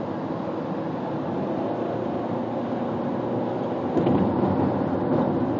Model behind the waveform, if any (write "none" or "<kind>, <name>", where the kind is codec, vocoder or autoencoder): none